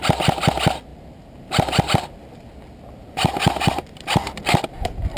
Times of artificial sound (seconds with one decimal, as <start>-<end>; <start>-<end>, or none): 3.0-4.4